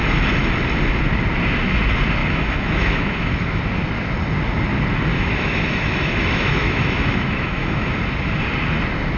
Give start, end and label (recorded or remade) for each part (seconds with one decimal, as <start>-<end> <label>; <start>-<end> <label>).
0.0-2.2 recorded; 2.2-3.6 remade; 3.6-5.1 recorded; 5.1-7.9 remade; 7.9-9.2 recorded